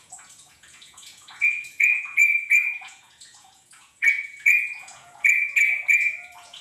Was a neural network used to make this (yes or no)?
yes